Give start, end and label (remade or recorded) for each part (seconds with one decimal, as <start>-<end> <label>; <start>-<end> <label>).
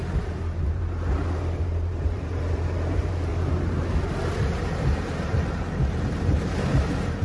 0.0-3.3 remade; 3.3-4.7 recorded; 4.7-7.2 remade